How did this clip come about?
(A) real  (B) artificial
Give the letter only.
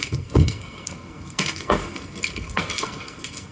B